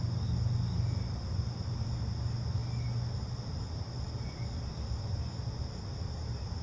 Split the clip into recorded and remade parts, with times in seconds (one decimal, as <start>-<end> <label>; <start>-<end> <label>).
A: 0.0-6.6 recorded